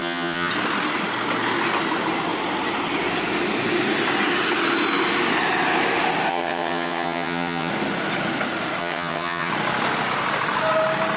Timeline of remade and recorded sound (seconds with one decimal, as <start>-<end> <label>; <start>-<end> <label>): 0.0-0.5 remade; 0.5-6.3 recorded; 6.3-7.7 remade; 7.7-8.8 recorded; 8.8-9.5 remade; 9.5-11.2 recorded